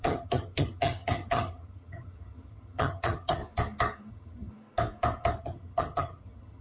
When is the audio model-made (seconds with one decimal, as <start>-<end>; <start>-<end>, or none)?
0.0-3.4; 4.1-4.5; 5.4-6.6